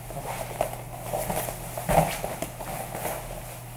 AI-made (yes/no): no